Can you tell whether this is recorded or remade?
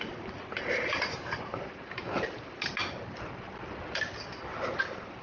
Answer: recorded